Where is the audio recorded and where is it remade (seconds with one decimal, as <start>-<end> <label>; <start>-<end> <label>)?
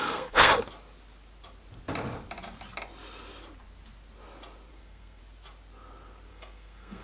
0.0-0.5 remade; 0.5-4.7 recorded; 4.7-5.2 remade; 5.2-6.3 recorded; 6.3-7.0 remade